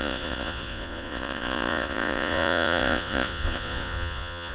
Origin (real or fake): fake